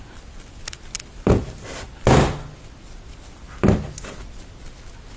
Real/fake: real